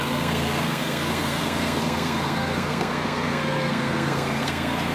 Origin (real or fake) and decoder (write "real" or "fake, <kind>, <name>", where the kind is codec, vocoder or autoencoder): fake, codec, SNAC